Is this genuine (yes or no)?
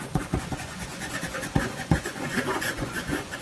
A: no